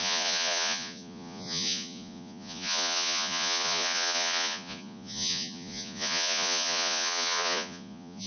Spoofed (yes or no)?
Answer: yes